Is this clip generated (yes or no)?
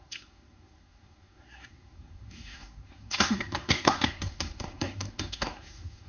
yes